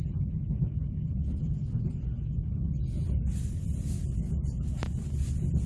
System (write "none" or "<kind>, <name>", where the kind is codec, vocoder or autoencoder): none